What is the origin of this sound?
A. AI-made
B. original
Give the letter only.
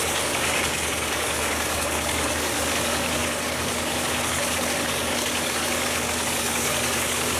A